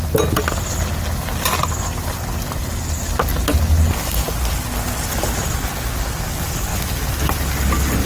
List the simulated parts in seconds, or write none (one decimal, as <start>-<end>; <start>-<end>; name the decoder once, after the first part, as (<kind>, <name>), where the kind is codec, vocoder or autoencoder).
none